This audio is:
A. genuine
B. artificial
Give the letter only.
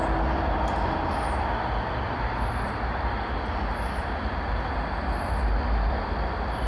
A